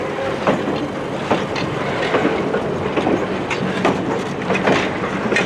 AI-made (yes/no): no